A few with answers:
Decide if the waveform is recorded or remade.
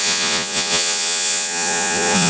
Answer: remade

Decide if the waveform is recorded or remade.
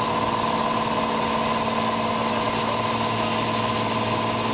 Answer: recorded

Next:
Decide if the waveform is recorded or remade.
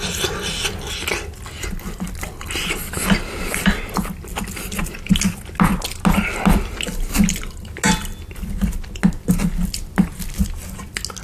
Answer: recorded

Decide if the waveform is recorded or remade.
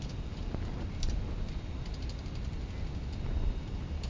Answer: recorded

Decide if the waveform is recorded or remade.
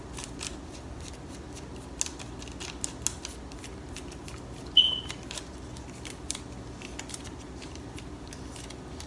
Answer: recorded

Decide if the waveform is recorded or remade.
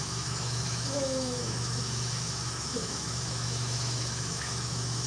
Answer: remade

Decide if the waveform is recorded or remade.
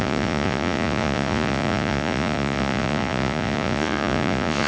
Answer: remade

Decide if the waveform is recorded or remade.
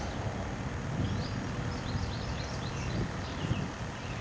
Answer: recorded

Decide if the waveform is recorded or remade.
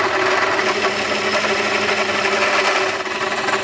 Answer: recorded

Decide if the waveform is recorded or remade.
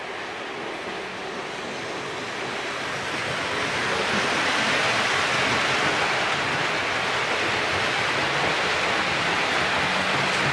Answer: recorded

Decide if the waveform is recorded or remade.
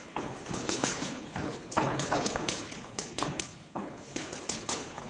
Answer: remade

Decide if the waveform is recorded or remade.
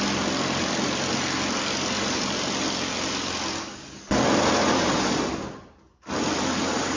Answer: recorded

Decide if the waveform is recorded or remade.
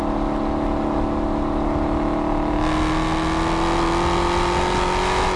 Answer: recorded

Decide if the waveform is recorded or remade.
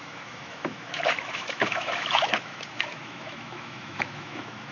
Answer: remade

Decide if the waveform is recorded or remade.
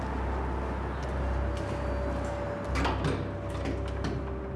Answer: recorded